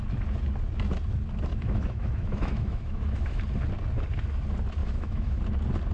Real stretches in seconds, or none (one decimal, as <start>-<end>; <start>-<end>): 0.0-1.5; 3.4-4.8; 5.4-5.9